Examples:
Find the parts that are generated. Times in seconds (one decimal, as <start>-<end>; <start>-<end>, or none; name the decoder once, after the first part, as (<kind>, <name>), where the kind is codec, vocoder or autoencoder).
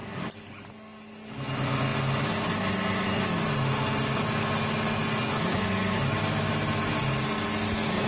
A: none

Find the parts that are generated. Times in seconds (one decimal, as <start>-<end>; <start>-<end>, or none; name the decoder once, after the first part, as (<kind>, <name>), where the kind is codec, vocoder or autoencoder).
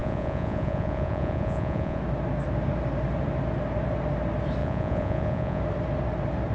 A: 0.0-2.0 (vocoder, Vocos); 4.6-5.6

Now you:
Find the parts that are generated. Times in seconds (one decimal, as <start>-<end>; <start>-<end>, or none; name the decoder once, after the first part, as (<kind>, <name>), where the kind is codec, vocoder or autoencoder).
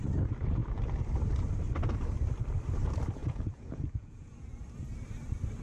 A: 3.2-4.6 (vocoder, Vocos)